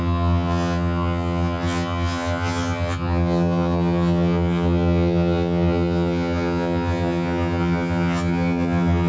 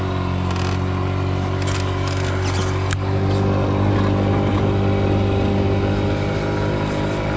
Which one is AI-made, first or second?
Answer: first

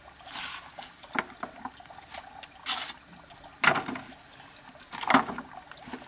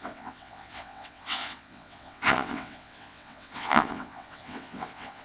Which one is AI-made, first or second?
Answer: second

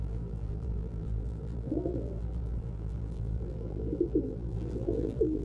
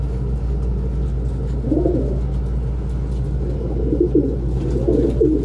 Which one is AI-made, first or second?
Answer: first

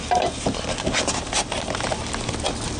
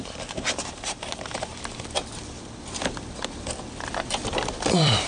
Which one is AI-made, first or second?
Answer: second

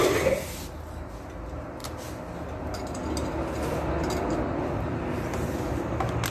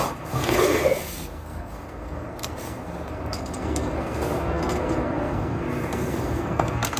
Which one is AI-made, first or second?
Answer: second